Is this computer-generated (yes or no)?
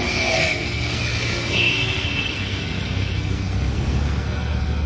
yes